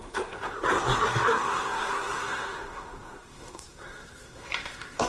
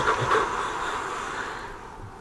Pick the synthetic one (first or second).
first